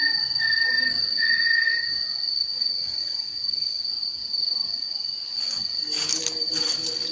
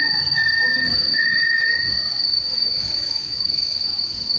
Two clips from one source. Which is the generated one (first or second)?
second